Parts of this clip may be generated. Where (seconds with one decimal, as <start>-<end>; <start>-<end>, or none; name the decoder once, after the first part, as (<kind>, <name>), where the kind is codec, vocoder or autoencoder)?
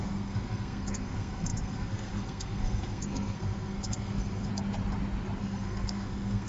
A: 0.0-4.5 (codec, SNAC); 5.4-6.5